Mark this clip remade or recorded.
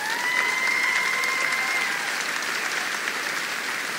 recorded